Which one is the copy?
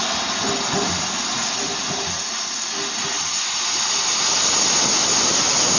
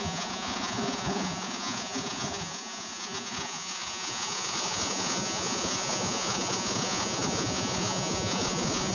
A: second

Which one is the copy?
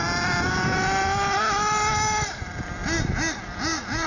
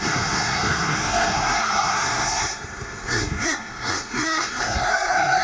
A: second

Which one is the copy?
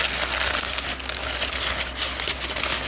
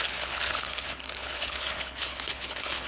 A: second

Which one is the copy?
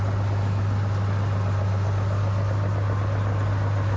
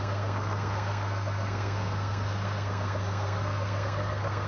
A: second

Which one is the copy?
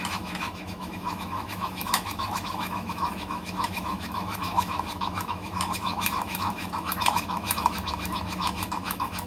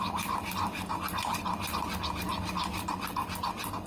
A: first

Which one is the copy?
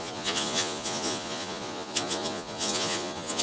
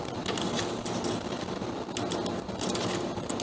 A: first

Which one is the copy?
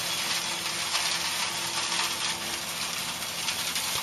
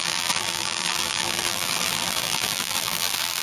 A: second